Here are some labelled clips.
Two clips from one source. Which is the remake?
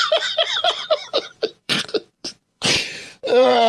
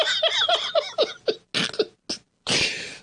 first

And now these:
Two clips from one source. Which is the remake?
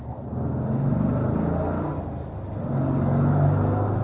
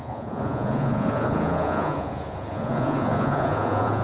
second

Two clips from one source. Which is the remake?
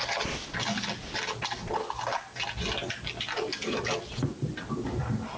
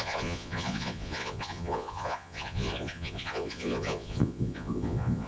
second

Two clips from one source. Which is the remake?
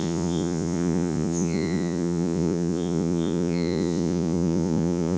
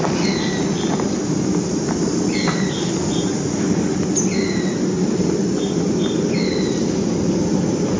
first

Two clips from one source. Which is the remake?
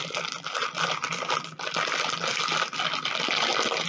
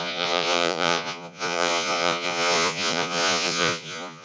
second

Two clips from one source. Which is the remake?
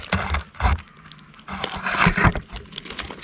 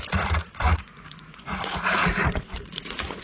second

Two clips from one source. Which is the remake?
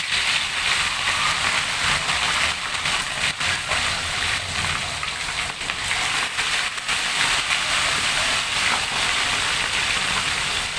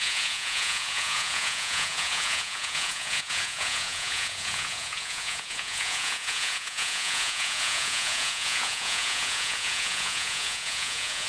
second